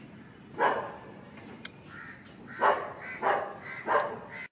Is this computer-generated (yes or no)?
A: no